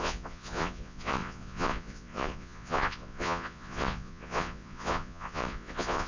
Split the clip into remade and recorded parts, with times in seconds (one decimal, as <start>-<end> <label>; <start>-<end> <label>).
0.0-6.1 remade